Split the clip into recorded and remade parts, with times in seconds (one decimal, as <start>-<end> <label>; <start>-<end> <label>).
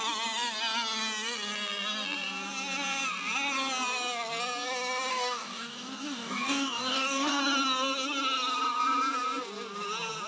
0.0-5.1 recorded; 5.1-7.4 remade; 7.4-10.3 recorded